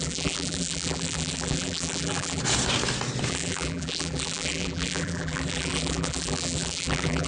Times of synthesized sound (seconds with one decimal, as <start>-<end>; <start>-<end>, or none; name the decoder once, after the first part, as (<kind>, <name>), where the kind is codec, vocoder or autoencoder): 0.0-2.4 (vocoder, BigVGAN v2); 3.3-7.3